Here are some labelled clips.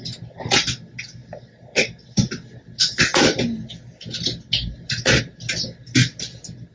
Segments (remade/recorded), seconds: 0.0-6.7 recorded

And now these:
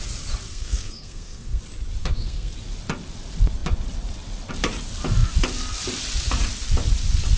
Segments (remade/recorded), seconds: 0.0-0.5 recorded; 0.5-1.6 remade; 1.6-2.0 recorded; 2.0-2.5 remade; 2.5-7.4 recorded